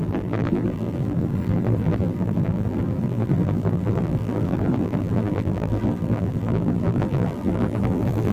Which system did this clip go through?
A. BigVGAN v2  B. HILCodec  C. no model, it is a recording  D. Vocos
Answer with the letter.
A